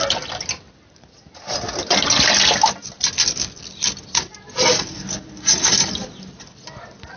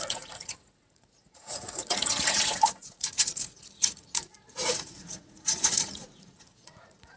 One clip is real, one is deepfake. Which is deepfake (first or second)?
second